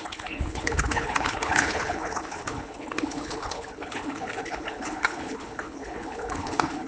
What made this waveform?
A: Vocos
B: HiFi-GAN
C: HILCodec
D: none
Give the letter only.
C